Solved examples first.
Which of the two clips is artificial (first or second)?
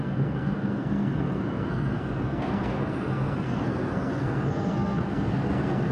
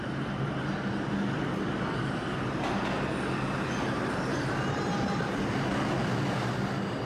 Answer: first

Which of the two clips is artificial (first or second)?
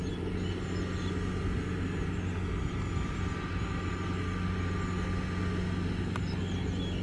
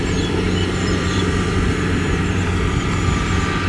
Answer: second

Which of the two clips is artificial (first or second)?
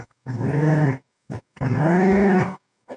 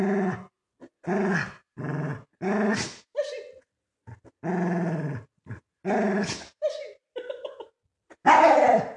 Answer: first